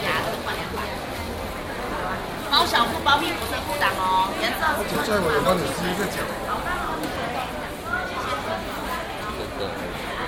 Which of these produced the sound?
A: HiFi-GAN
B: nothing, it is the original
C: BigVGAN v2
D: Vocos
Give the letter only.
B